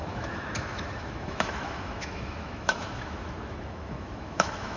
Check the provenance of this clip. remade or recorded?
remade